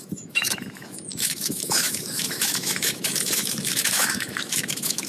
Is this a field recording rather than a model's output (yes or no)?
no